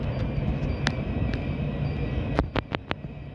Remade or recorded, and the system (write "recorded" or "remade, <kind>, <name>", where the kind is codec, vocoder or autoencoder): recorded